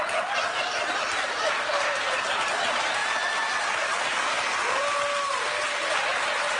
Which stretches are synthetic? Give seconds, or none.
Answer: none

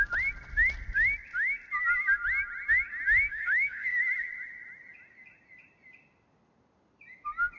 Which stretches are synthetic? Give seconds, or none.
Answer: 3.3-4.0 (autoencoder, DAC-VAE)

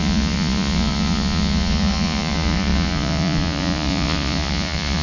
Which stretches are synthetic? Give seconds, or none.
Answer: 0.0-5.0 (vocoder, Vocos)

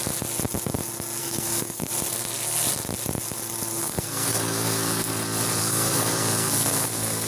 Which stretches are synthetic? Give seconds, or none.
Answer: 1.2-1.9 (codec, SNAC); 3.8-5.1; 5.6-7.3